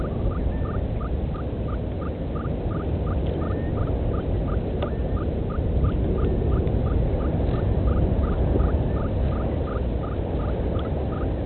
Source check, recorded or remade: recorded